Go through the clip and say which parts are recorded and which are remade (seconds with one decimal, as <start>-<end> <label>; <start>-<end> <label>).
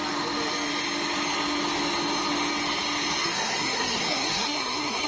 0.0-3.2 recorded; 3.2-5.1 remade